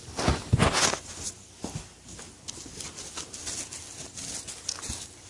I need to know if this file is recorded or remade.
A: recorded